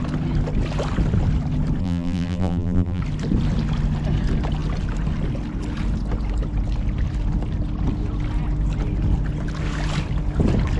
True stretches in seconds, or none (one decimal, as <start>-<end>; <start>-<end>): 0.0-1.8; 3.0-10.8